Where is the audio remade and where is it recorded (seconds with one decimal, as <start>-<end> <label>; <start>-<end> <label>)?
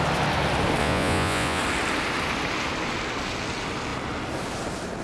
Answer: 0.0-0.8 recorded; 0.8-1.6 remade; 1.6-5.0 recorded